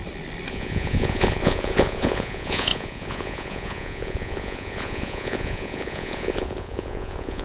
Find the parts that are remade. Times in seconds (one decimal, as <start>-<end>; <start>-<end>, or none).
0.5-7.4